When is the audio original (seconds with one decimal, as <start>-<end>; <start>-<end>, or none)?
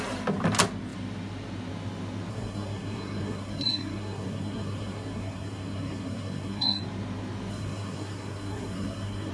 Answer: 0.0-2.3; 6.8-7.5